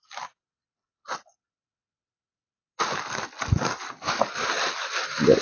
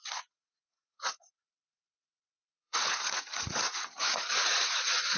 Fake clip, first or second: second